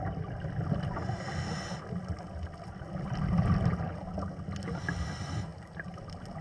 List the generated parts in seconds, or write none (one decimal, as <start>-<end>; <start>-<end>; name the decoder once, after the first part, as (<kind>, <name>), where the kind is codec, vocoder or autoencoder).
none